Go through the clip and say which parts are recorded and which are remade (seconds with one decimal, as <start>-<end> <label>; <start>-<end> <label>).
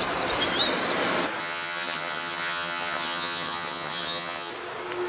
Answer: 0.0-1.4 recorded; 1.4-4.5 remade; 4.5-5.1 recorded